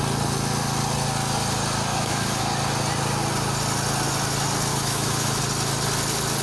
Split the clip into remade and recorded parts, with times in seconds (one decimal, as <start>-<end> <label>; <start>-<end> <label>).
0.0-1.9 recorded; 1.9-2.4 remade; 2.4-4.7 recorded; 4.7-5.4 remade; 5.4-6.4 recorded